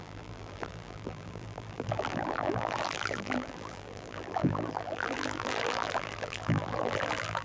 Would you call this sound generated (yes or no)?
yes